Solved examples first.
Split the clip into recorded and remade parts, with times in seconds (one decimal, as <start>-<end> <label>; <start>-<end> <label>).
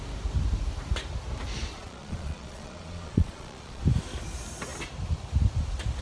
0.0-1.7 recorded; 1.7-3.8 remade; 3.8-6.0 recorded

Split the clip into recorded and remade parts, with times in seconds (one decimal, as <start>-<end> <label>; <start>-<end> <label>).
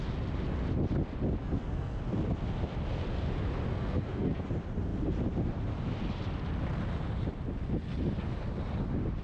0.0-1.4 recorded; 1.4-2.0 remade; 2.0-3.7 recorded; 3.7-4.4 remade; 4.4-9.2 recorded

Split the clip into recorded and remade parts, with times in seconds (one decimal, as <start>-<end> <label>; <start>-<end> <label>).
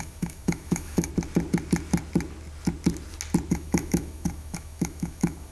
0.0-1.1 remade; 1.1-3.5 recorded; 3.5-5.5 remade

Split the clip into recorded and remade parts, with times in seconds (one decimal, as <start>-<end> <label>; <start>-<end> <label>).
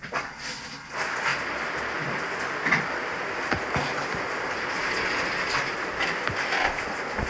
0.0-7.3 recorded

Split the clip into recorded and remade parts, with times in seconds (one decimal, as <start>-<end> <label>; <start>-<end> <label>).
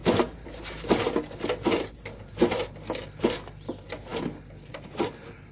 0.0-5.5 recorded